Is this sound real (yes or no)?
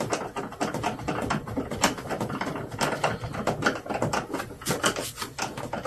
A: yes